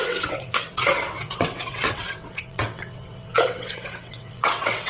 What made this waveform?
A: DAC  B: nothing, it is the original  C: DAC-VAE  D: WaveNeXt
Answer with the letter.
D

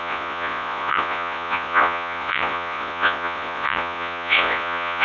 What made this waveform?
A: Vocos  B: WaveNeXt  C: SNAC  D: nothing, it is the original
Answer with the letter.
A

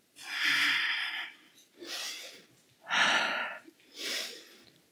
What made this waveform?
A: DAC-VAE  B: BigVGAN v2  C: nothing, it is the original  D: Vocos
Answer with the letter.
C